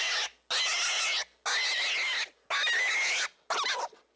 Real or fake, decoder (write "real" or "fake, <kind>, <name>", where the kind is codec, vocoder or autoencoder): real